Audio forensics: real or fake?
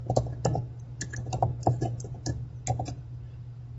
real